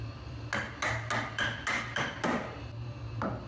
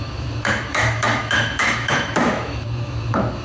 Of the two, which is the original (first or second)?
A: first